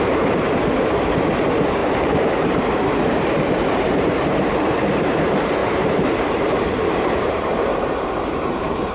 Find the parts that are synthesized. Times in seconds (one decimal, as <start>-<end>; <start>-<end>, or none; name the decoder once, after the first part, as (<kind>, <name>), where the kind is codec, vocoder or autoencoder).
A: 0.0-7.7 (vocoder, BigVGAN v2); 8.4-8.9